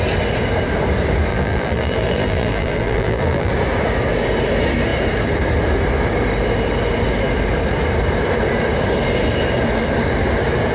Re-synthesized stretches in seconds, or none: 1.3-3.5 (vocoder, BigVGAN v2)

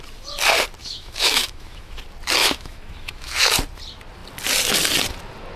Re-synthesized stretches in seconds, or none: 0.8-2.0 (autoencoder, DAC-VAE); 2.4-3.5

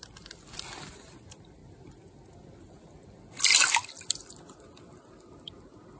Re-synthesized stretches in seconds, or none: none

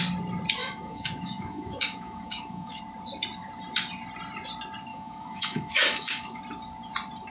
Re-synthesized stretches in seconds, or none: 0.6-2.8 (autoencoder, DAC-VAE); 4.9-6.4

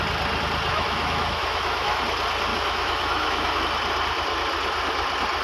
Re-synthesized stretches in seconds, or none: 0.7-2.0 (autoencoder, DAC-VAE); 2.5-3.6

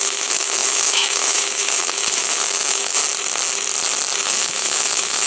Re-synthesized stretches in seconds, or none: 0.0-3.0 (autoencoder, DAC-VAE); 4.2-5.3

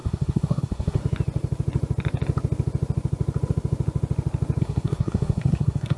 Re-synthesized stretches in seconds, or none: 0.0-1.0 (codec, SNAC); 4.6-6.0

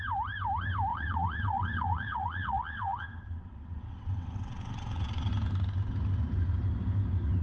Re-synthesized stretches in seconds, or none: 0.9-5.3 (vocoder, WaveNeXt)